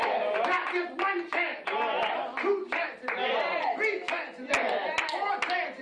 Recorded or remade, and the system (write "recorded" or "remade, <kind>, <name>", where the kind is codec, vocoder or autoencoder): recorded